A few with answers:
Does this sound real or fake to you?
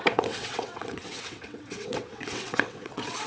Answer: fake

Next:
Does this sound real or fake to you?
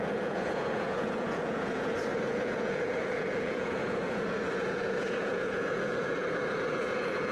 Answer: fake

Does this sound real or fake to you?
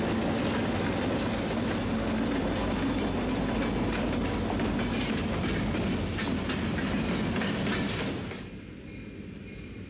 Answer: real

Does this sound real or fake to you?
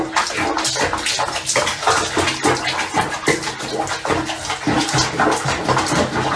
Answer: real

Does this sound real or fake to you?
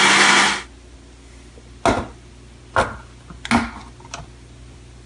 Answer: real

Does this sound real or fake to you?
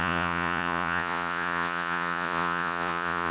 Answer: fake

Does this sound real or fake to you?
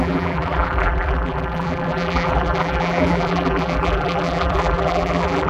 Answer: fake